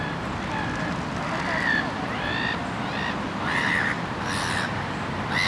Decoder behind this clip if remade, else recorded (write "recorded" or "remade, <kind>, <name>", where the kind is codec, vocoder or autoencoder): recorded